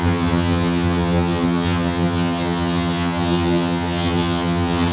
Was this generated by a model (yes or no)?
yes